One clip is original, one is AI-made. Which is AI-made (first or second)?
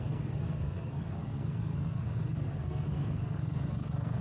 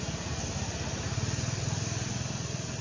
first